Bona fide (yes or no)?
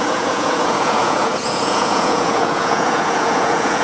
no